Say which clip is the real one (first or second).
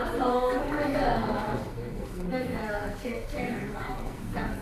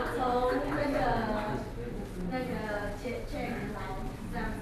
second